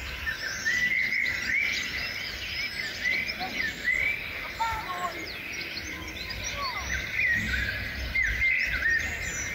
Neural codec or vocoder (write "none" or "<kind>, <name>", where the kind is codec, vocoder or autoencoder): none